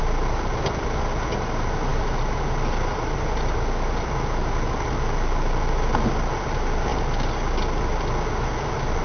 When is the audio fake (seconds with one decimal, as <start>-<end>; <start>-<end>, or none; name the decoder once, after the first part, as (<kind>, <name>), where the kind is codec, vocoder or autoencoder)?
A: none